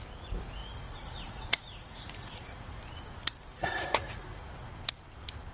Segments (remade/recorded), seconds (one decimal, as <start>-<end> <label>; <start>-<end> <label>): 0.0-0.6 recorded; 0.6-2.8 remade; 2.8-3.5 recorded; 3.5-4.4 remade; 4.4-5.5 recorded